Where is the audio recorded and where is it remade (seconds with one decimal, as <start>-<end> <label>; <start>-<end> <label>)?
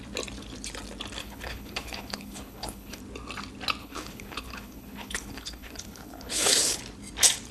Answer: 0.0-1.2 recorded; 1.2-3.0 remade; 3.0-3.8 recorded; 3.8-6.8 remade; 6.8-7.5 recorded